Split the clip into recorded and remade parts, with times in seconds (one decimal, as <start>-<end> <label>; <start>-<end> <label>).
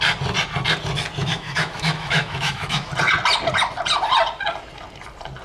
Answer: 0.0-1.2 recorded; 1.2-2.9 remade; 2.9-5.4 recorded